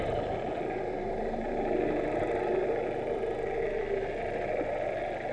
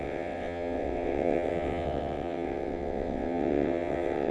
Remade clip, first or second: second